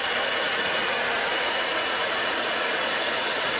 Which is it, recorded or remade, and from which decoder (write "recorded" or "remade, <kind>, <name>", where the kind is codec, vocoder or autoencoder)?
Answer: remade, vocoder, Vocos